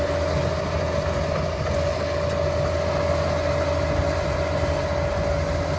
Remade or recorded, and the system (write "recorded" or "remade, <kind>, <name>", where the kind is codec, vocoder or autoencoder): recorded